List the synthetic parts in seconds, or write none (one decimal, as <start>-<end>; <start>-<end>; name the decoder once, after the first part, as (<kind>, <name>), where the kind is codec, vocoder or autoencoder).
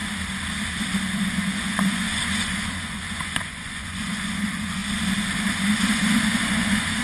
1.1-4.8 (vocoder, Vocos); 5.5-7.0